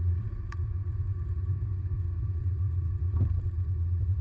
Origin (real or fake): fake